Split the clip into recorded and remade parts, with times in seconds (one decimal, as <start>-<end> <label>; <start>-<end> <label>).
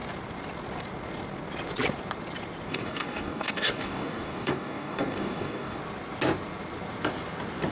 0.0-2.7 recorded; 2.7-5.8 remade; 5.8-7.7 recorded